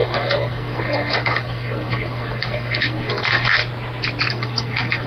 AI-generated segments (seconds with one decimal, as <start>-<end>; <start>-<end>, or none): 0.0-3.6; 4.3-5.1